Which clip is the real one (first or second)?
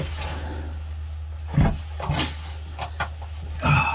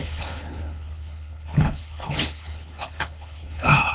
first